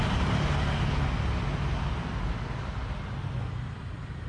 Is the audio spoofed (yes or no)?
no